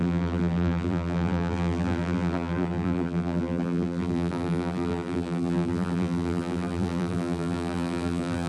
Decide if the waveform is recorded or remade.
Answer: remade